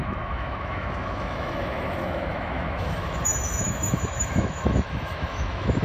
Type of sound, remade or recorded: remade